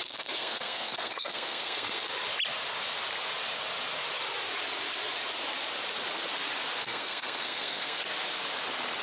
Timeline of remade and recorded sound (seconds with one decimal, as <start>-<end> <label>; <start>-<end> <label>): 0.0-2.1 remade; 2.1-6.8 recorded; 6.8-8.0 remade; 8.0-9.0 recorded